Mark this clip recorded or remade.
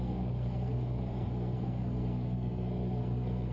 remade